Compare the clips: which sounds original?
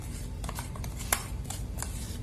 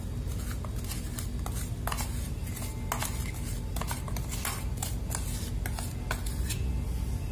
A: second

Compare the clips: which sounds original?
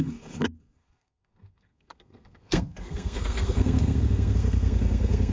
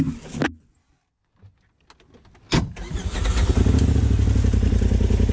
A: second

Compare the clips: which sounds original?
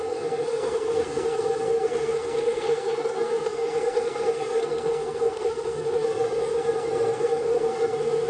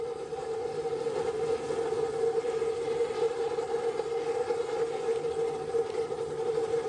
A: second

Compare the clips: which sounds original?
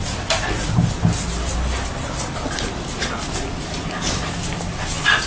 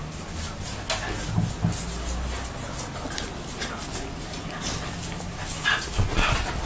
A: second